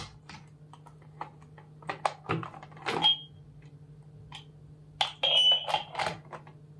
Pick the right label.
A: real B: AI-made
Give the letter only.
A